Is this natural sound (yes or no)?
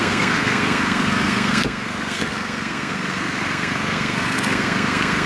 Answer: no